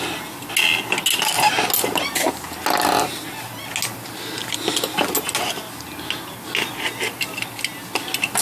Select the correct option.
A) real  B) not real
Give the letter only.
A